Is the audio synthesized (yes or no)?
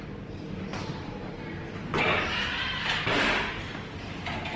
no